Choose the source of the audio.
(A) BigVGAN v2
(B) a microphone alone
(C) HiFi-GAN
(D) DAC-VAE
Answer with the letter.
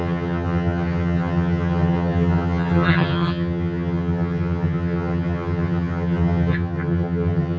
C